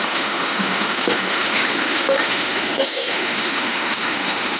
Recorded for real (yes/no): no